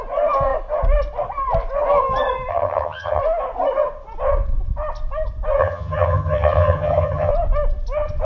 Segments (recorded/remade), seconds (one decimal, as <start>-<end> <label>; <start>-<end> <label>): 0.0-2.5 recorded; 2.5-3.2 remade; 3.2-5.6 recorded; 5.6-7.3 remade; 7.3-8.2 recorded